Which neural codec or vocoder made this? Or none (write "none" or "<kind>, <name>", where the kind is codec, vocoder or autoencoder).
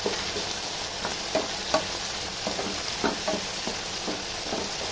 none